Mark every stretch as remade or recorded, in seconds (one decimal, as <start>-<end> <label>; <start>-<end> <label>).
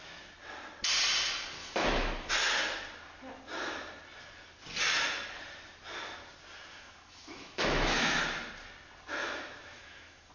0.0-1.6 recorded; 1.6-2.3 remade; 2.3-6.7 recorded; 6.7-8.2 remade; 8.2-9.2 recorded; 9.2-10.3 remade